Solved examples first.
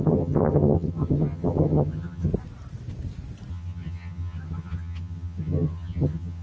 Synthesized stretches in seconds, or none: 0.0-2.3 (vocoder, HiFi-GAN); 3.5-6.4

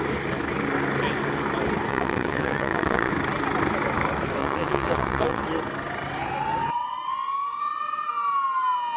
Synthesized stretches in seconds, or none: 1.9-3.1 (vocoder, WaveNeXt); 4.4-5.4

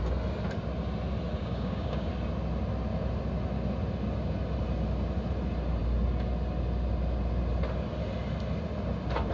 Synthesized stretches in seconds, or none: 1.4-2.1 (codec, DAC)

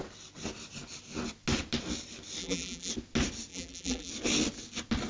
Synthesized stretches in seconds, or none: 2.4-2.9 (vocoder, BigVGAN v2); 3.5-4.1

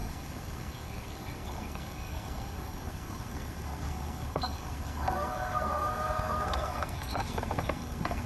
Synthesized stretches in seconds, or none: 0.0-8.3 (codec, SNAC)